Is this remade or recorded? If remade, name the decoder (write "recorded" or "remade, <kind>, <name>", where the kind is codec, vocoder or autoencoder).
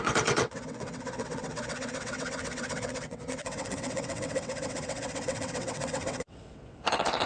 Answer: remade, vocoder, WaveNeXt